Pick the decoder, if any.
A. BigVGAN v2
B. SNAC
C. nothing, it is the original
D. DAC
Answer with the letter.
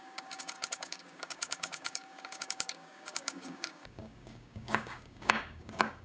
D